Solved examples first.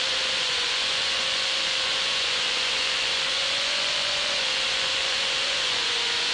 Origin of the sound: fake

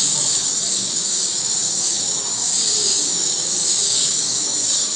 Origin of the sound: fake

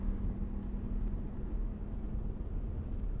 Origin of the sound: real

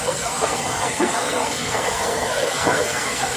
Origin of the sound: fake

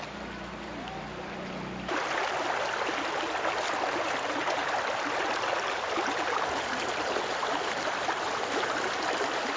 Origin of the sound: real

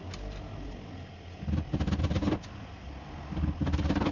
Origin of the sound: real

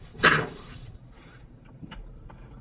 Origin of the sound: fake